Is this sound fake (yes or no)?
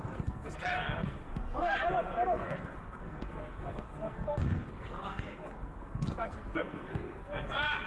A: yes